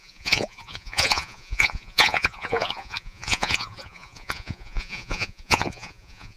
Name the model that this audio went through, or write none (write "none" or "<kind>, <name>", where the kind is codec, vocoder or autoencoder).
vocoder, Vocos